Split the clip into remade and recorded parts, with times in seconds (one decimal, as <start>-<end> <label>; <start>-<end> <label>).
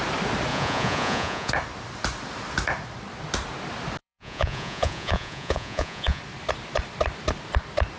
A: 0.0-0.5 recorded; 0.5-1.5 remade; 1.5-4.0 recorded; 4.0-6.2 remade; 6.2-8.0 recorded